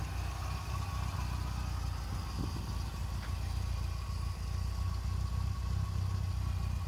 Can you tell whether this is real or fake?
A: real